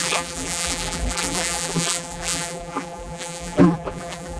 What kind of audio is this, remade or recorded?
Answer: remade